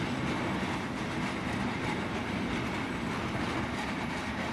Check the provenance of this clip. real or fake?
real